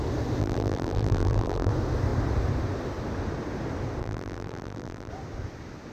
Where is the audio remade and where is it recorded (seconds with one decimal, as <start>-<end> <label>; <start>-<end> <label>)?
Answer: 0.0-0.4 recorded; 0.4-1.7 remade; 1.7-4.0 recorded; 4.0-5.1 remade; 5.1-5.9 recorded